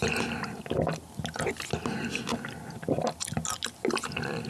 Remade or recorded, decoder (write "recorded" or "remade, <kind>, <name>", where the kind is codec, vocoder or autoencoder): recorded